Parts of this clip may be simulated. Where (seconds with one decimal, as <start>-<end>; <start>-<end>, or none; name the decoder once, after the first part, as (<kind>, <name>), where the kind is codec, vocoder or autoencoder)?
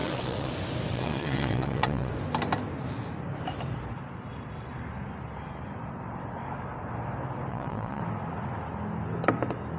0.0-0.5 (vocoder, WaveNeXt); 0.9-2.1; 7.5-8.0